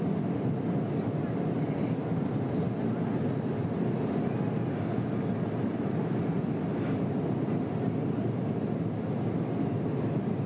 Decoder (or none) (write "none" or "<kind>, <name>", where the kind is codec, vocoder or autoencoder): none